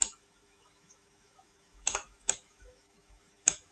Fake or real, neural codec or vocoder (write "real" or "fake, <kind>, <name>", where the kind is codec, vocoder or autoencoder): fake, autoencoder, DAC-VAE